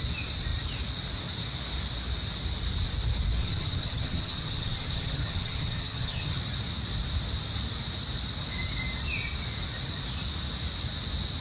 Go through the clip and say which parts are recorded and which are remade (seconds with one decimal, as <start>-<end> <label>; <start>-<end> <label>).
0.0-3.4 recorded; 3.4-6.4 remade; 6.4-11.4 recorded